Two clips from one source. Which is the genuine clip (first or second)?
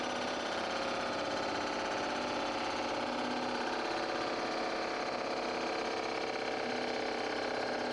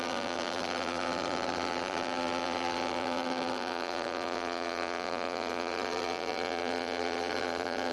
first